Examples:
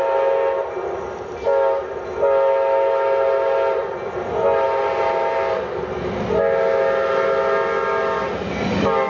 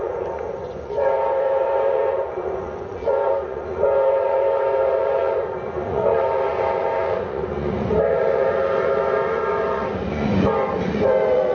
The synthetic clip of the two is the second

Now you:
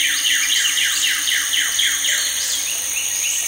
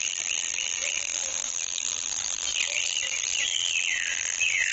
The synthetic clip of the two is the second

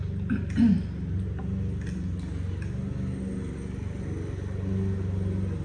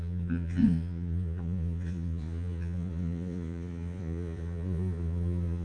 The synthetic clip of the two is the second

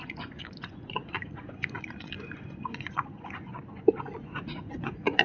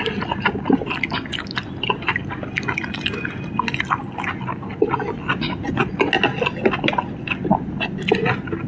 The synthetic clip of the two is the first